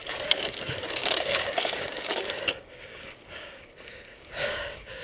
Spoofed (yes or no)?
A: yes